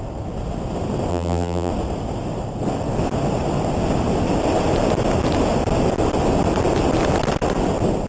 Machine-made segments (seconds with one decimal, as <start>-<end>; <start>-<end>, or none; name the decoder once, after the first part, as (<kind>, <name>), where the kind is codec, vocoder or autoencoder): 1.1-1.7 (vocoder, BigVGAN v2)